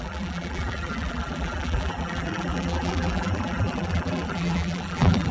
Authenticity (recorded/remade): remade